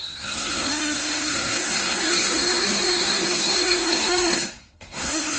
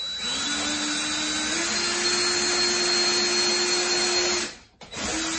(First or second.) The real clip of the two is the second